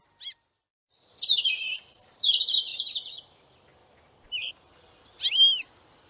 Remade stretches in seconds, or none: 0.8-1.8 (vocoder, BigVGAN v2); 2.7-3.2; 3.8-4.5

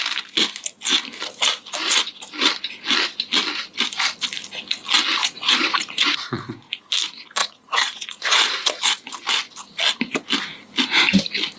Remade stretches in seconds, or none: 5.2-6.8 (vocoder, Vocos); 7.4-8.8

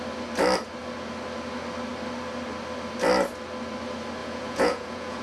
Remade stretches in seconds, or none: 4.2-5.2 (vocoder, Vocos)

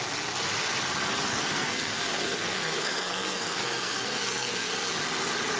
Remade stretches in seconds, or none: 1.3-4.7 (codec, SNAC)

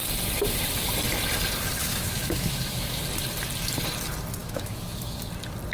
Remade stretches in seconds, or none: 1.8-3.0 (autoencoder, DAC-VAE); 4.4-5.2

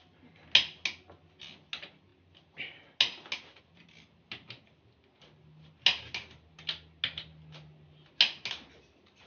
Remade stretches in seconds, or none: none

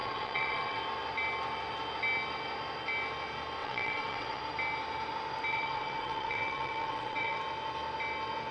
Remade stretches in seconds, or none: 0.0-0.8 (vocoder, WaveNeXt); 3.6-4.4; 5.5-7.4